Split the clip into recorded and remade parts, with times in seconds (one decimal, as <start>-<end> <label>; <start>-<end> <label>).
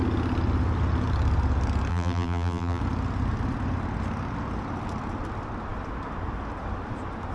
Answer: 0.0-1.9 recorded; 1.9-2.8 remade; 2.8-7.3 recorded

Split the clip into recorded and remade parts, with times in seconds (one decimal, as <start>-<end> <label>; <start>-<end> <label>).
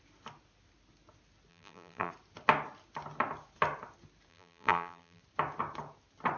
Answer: 0.0-1.5 recorded; 1.5-2.1 remade; 2.1-4.3 recorded; 4.3-5.2 remade; 5.2-6.4 recorded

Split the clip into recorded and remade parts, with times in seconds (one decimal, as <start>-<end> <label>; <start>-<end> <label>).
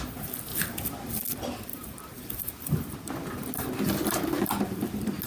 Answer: 0.0-1.7 recorded; 1.7-4.4 remade; 4.4-5.3 recorded